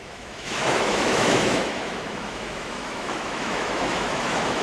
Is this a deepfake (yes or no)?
yes